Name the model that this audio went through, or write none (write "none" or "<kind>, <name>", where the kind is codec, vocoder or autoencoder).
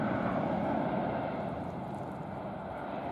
none